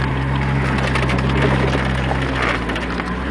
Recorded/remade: recorded